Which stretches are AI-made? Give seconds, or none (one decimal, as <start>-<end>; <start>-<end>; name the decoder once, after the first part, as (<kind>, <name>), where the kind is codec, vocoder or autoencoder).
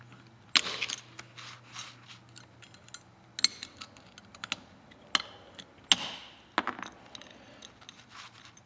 none